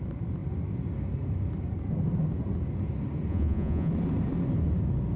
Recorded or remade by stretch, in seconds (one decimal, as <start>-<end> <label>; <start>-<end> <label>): 0.0-3.3 recorded; 3.3-3.9 remade; 3.9-5.2 recorded